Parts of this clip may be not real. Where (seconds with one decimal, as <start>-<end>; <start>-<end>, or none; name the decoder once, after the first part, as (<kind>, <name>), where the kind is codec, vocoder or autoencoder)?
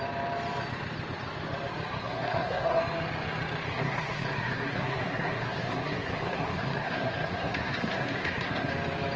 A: 1.9-2.8 (codec, SNAC); 3.7-8.7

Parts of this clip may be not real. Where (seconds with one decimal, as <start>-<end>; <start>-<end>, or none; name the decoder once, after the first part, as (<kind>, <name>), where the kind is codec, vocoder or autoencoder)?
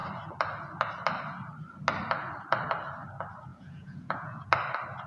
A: 3.5-4.5 (vocoder, Vocos)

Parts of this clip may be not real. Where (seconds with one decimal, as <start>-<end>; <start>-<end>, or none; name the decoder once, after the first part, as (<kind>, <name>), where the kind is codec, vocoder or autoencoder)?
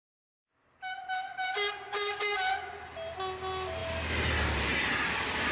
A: none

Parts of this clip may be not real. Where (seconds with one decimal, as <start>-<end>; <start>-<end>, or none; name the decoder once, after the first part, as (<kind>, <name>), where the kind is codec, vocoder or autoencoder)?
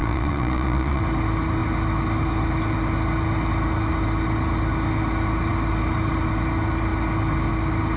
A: 0.0-1.0 (vocoder, Vocos)